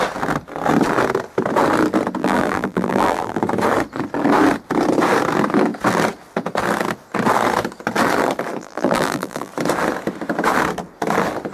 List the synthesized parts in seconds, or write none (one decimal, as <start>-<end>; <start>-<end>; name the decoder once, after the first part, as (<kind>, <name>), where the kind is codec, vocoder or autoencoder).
2.2-3.4 (vocoder, BigVGAN v2); 8.6-9.5